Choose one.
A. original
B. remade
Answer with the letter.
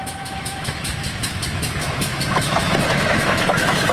B